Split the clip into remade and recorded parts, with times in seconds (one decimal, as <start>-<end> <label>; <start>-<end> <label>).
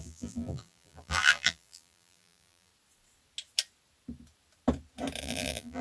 0.0-2.7 remade; 2.7-5.2 recorded; 5.2-5.8 remade